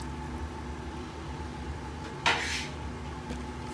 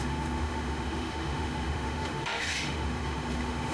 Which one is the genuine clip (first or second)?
first